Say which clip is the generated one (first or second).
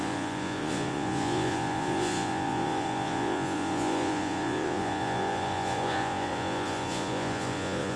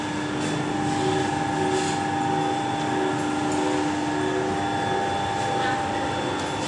first